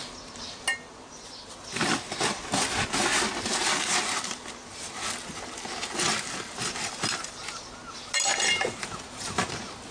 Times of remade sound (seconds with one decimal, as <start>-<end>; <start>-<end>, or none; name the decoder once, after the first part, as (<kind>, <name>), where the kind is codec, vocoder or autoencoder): 8.3-9.5 (vocoder, BigVGAN v2)